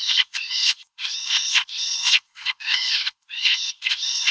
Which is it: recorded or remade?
remade